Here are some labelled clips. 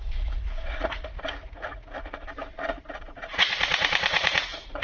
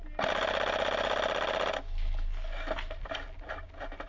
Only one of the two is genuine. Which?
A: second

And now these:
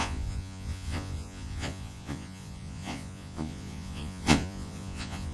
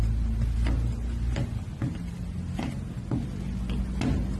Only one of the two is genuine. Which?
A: second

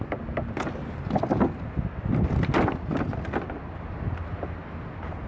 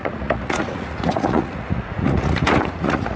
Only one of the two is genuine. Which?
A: first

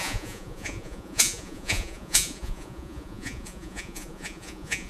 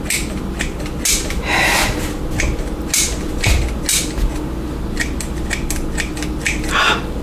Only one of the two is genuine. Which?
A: second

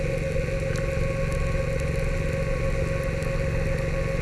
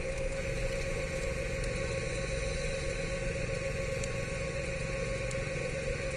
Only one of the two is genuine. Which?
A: first